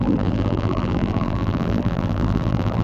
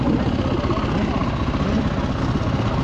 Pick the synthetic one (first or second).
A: first